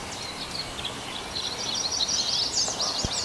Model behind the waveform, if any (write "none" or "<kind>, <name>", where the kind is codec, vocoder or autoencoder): none